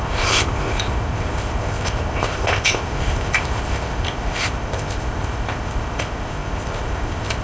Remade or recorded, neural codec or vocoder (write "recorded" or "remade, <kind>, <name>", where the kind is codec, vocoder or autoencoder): remade, codec, ZipCodec